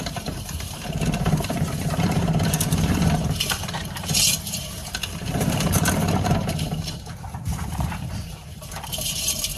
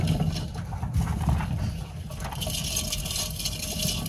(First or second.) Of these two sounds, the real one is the second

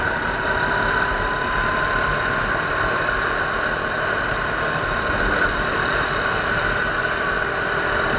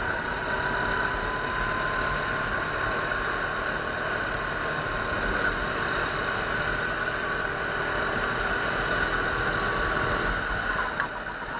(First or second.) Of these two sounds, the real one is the second